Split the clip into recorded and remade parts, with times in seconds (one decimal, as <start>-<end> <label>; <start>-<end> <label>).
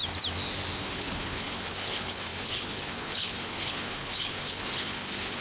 0.0-0.8 recorded; 0.8-5.4 remade